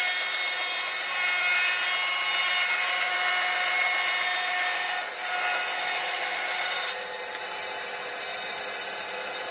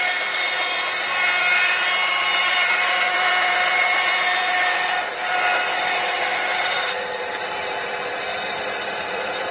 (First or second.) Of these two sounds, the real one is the first